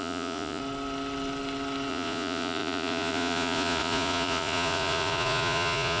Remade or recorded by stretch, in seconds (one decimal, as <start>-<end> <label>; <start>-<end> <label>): 0.0-0.6 remade; 0.6-1.9 recorded; 1.9-6.0 remade